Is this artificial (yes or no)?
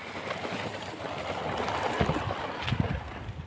no